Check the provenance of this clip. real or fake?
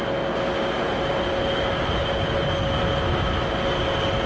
real